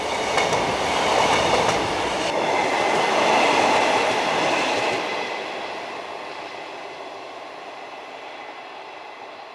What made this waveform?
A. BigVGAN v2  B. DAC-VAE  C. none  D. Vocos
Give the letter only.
C